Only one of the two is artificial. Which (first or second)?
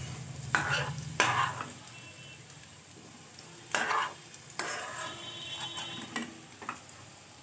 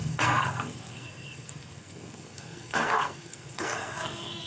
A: second